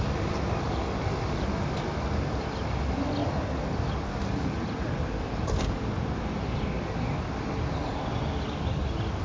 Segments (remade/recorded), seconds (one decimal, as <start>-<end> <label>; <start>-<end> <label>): 0.0-9.2 recorded